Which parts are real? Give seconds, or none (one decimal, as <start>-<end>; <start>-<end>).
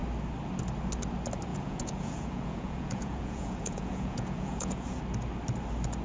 0.0-1.5; 5.0-6.0